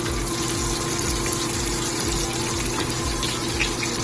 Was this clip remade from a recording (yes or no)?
no